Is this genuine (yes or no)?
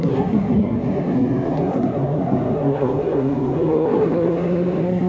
no